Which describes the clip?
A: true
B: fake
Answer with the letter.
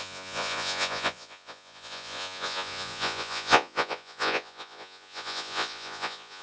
B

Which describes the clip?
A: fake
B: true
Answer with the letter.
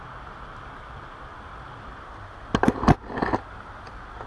B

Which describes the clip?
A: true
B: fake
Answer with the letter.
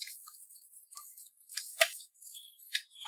B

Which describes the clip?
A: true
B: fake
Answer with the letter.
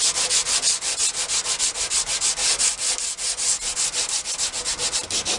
A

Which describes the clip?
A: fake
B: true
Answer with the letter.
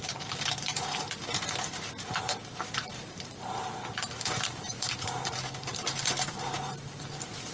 A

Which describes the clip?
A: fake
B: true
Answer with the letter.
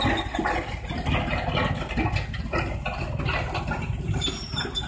B